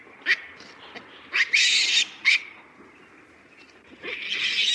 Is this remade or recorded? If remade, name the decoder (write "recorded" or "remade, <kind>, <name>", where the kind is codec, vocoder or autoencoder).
recorded